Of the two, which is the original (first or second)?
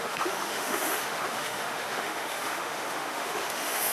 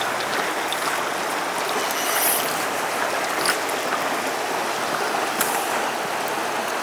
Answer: second